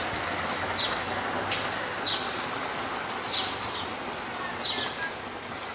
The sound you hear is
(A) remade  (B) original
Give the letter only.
B